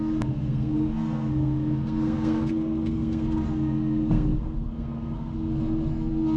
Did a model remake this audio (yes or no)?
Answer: yes